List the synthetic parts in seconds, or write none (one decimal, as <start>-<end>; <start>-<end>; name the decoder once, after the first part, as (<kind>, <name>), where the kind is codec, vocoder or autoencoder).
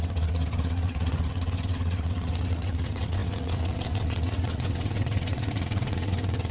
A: 0.0-6.5 (vocoder, WaveNeXt)